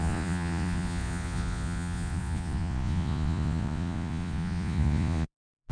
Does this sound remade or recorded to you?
remade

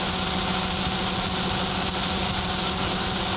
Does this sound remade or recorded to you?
recorded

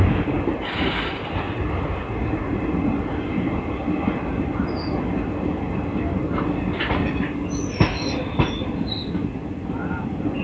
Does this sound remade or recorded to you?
recorded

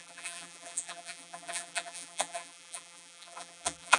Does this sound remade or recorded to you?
remade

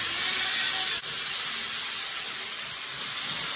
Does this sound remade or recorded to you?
recorded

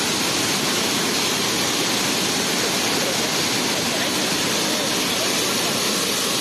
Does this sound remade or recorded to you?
recorded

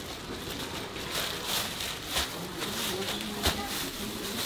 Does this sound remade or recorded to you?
remade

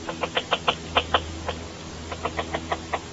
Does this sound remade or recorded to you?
recorded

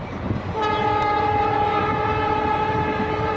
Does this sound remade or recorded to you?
remade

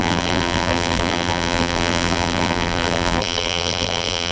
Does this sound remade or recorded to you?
remade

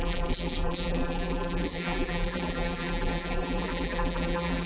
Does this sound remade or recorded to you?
remade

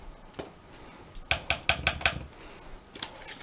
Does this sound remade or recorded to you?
recorded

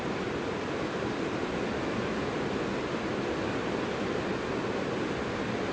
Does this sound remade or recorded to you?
recorded